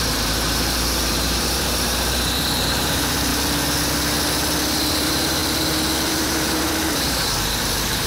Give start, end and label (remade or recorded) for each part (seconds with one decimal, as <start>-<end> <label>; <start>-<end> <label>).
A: 0.0-3.3 remade; 3.3-4.9 recorded; 4.9-5.4 remade; 5.4-6.1 recorded; 6.1-8.1 remade

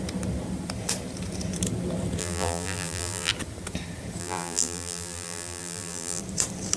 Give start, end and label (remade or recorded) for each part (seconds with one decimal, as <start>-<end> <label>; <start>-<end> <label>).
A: 0.0-2.2 recorded; 2.2-3.3 remade; 3.3-4.2 recorded; 4.2-6.2 remade; 6.2-6.8 recorded

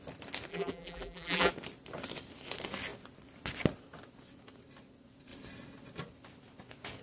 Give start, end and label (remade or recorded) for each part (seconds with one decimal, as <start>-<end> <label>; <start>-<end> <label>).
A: 0.0-0.5 recorded; 0.5-1.5 remade; 1.5-7.0 recorded

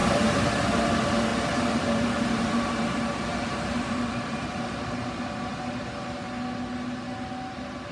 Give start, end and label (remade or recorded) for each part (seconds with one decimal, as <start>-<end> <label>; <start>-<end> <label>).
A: 0.0-0.5 remade; 0.5-1.3 recorded; 1.3-5.2 remade; 5.2-7.9 recorded

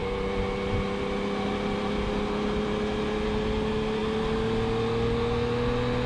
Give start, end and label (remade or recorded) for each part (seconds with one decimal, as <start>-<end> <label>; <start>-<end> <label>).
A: 0.0-6.1 recorded

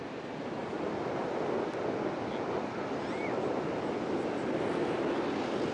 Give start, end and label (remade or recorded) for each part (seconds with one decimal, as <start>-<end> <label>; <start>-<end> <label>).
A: 0.0-5.7 recorded

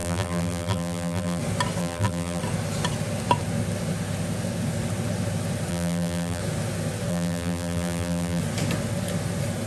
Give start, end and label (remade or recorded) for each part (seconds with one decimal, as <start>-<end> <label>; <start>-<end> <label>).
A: 0.0-1.4 remade; 1.4-1.8 recorded; 1.8-2.4 remade; 2.4-5.7 recorded; 5.7-6.4 remade; 6.4-7.1 recorded; 7.1-8.4 remade; 8.4-9.7 recorded

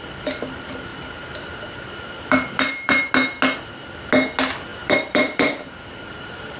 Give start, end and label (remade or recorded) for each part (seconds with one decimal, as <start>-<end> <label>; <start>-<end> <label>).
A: 0.0-0.9 recorded; 0.9-3.1 remade; 3.1-4.7 recorded; 4.7-6.6 remade